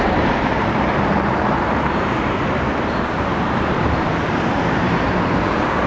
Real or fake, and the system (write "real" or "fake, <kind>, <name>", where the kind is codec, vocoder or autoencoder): fake, vocoder, BigVGAN v2